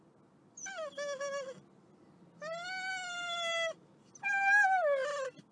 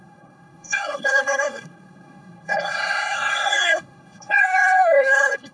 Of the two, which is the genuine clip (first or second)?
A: first